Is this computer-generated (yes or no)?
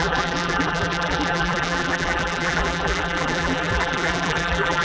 yes